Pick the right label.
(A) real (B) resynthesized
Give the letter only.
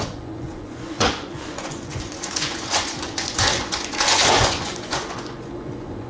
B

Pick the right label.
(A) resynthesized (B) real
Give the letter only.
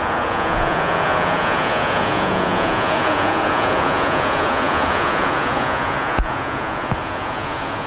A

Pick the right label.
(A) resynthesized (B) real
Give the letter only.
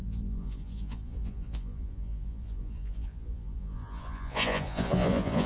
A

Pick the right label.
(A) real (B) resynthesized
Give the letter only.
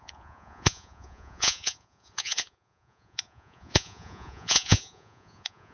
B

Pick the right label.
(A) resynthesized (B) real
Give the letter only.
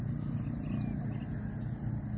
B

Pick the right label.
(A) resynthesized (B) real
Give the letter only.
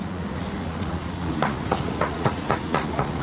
A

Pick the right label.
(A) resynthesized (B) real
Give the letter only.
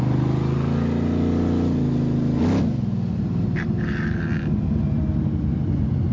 B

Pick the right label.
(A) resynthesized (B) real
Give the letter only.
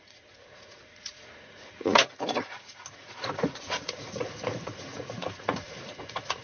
A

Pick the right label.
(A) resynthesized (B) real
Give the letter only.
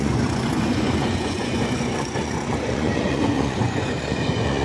A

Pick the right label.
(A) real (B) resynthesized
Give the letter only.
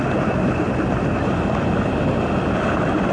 A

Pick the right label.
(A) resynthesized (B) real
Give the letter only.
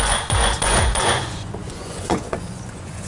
A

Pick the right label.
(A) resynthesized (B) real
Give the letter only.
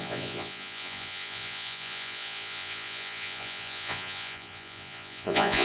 A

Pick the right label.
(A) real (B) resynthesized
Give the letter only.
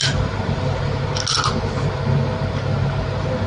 A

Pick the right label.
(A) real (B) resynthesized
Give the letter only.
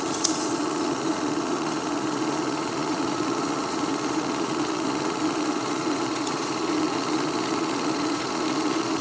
B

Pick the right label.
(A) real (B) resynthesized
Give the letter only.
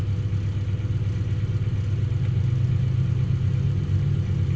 A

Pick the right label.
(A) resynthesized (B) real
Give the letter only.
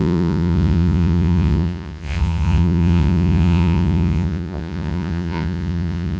A